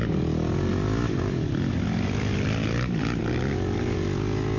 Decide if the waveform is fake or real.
real